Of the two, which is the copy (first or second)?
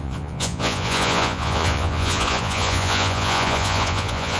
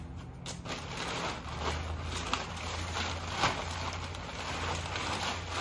first